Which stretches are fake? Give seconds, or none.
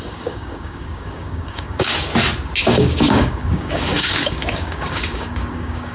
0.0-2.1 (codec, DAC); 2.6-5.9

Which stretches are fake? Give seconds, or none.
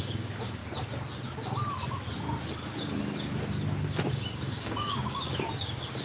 0.0-0.6 (codec, DAC); 4.1-6.0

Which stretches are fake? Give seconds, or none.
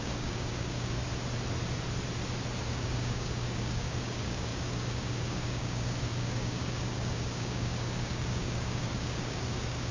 0.0-1.0 (codec, DAC); 2.7-9.9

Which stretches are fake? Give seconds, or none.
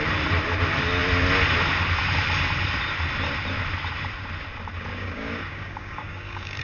4.9-6.6 (codec, DAC)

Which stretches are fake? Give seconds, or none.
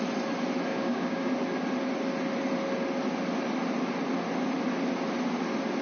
0.7-1.3 (codec, DAC)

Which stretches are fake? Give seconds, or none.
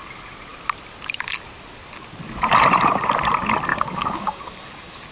3.7-4.4 (codec, DAC)